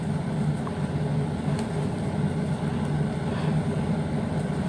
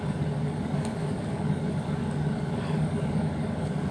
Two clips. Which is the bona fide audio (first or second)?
first